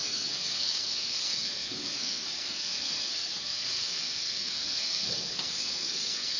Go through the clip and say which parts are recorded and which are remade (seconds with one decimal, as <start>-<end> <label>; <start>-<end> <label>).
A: 0.0-6.4 remade